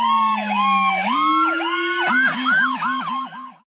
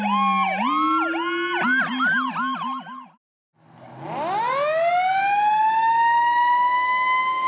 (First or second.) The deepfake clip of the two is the first